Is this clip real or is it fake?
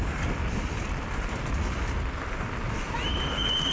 real